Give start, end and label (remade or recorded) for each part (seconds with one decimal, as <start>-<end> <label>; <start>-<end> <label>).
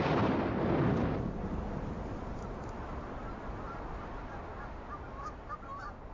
0.0-6.1 recorded